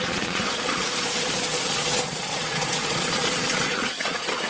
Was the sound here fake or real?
fake